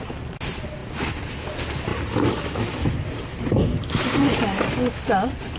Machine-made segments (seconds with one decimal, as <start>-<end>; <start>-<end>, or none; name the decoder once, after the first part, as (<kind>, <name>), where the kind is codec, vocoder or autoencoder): none